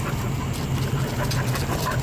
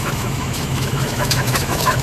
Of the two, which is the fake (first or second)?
second